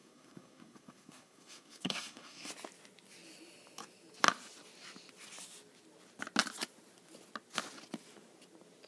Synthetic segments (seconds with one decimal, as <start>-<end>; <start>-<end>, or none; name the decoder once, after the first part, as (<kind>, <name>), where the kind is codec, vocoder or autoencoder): 0.0-2.5 (codec, SNAC)